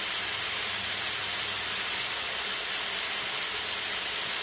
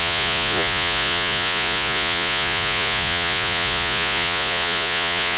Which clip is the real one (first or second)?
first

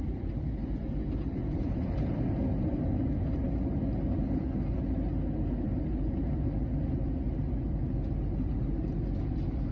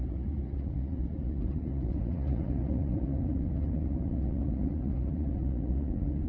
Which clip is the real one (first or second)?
first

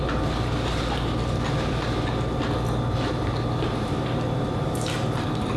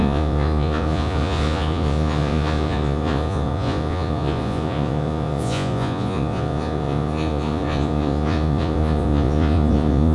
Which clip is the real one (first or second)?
first